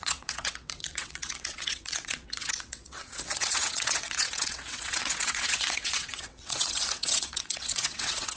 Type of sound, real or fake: fake